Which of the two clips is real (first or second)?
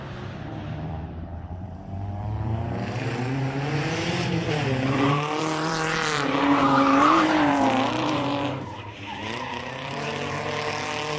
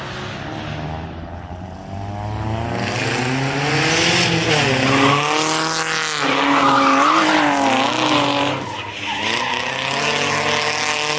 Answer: second